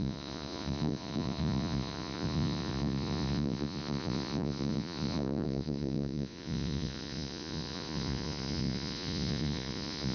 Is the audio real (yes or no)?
no